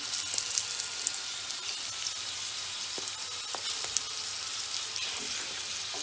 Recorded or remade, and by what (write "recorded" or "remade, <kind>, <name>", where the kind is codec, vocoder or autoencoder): recorded